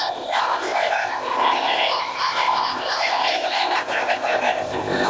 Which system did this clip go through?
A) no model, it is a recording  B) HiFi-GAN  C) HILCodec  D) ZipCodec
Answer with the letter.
D